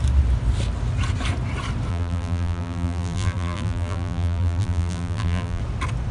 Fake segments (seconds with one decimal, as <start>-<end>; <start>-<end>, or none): 1.9-5.6